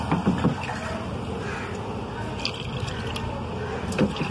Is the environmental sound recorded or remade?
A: recorded